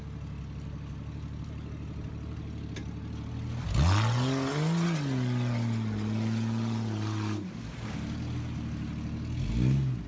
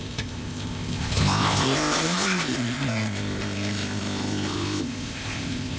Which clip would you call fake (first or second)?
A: second